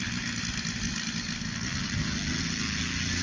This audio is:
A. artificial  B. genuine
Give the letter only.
B